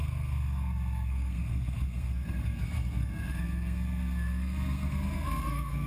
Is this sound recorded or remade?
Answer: remade